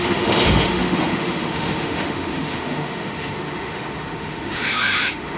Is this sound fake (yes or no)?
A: yes